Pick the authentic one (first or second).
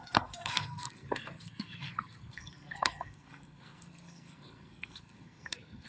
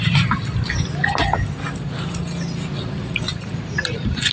second